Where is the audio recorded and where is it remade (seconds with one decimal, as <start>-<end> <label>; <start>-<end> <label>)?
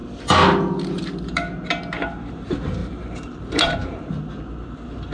0.0-2.8 recorded; 2.8-4.2 remade; 4.2-5.1 recorded